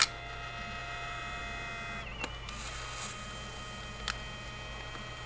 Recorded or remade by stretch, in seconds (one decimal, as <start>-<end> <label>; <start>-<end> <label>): 0.0-0.8 recorded; 0.8-1.4 remade; 1.4-5.3 recorded